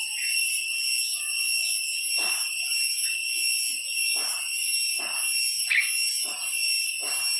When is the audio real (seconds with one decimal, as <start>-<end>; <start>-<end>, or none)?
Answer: 0.8-7.4